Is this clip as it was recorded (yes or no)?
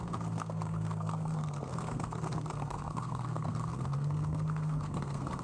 no